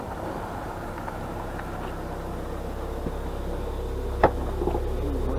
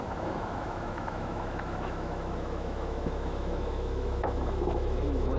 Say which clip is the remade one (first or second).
second